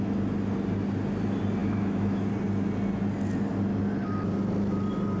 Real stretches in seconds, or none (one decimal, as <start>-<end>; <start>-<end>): 0.0-1.6; 2.3-5.2